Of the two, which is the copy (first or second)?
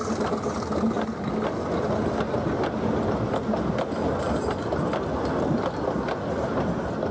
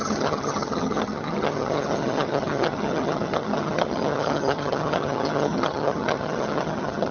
second